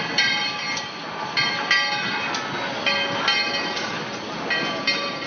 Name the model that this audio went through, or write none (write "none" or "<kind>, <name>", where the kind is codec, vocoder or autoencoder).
none